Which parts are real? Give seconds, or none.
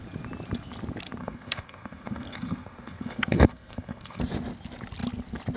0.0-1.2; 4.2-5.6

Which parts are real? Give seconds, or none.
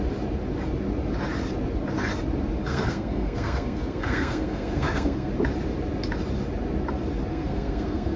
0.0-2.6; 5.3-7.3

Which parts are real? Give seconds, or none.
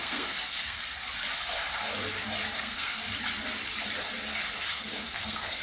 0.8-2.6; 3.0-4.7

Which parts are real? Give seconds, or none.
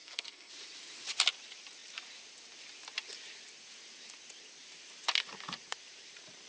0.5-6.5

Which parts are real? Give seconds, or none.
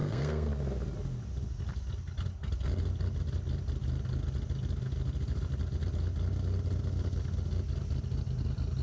0.5-8.8